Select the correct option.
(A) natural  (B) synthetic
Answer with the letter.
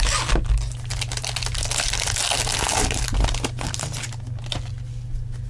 A